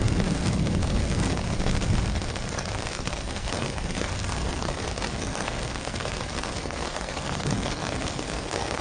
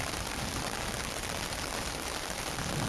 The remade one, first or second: first